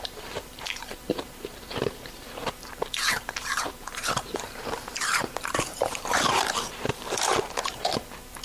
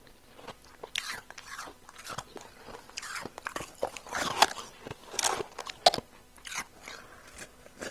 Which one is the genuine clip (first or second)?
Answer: second